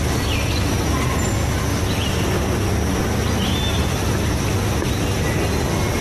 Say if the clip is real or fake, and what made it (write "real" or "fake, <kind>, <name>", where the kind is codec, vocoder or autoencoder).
real